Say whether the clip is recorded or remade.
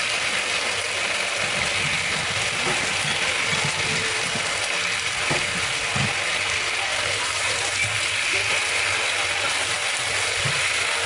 recorded